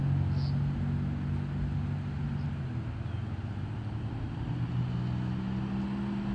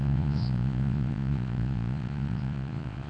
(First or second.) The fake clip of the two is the second